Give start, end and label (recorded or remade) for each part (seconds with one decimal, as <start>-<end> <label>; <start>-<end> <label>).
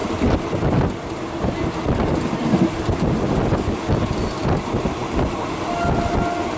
0.0-6.6 recorded